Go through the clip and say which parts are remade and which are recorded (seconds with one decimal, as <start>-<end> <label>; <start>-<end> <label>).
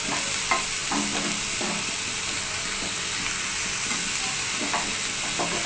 0.0-5.7 recorded